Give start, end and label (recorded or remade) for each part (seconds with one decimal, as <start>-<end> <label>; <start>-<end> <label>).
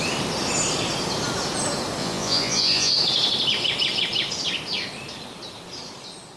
0.0-2.0 recorded; 2.0-2.9 remade; 2.9-6.4 recorded